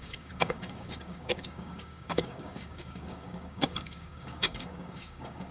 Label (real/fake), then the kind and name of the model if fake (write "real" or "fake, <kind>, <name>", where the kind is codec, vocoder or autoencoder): fake, codec, DAC